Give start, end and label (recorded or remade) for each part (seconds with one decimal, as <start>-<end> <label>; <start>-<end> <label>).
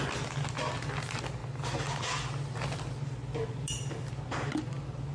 0.0-5.1 recorded